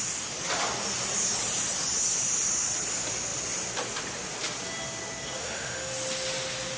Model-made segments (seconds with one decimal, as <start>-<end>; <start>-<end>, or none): 5.4-5.9